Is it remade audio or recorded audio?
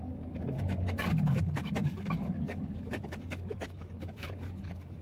remade